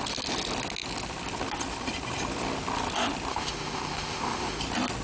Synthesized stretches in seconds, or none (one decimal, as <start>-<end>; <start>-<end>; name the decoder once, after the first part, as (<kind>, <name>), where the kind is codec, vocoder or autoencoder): 3.3-4.6 (autoencoder, DAC-VAE)